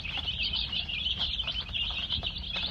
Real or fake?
fake